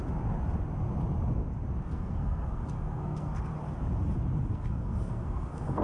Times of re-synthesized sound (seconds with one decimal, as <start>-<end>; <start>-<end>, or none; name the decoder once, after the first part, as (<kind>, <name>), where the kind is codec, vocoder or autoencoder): 1.8-3.5 (codec, SNAC); 4.5-5.8